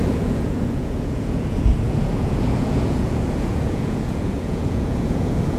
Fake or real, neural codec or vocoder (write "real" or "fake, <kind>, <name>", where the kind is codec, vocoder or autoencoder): fake, vocoder, Vocos